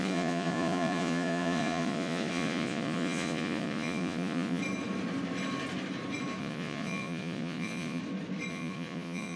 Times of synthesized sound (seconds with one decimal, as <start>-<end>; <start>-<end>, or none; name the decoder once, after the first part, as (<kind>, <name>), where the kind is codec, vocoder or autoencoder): 0.0-4.6 (vocoder, Vocos); 6.4-8.0; 8.5-9.4